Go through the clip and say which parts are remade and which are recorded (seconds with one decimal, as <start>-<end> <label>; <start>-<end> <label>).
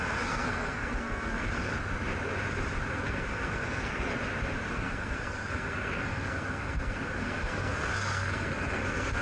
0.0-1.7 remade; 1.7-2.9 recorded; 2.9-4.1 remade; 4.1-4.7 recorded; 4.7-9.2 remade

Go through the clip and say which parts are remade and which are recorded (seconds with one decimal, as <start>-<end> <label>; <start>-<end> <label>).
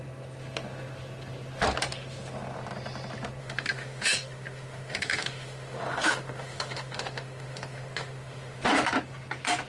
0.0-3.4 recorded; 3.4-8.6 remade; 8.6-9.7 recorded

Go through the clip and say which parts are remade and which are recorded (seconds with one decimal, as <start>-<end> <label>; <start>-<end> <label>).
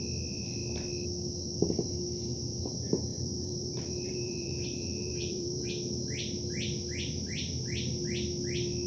0.0-3.1 recorded; 3.1-5.6 remade; 5.6-8.9 recorded